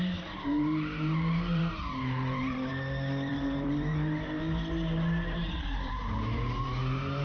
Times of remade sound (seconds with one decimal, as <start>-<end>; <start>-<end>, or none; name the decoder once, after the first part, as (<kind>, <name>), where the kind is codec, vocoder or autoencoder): 0.0-2.7 (vocoder, BigVGAN v2); 3.3-7.2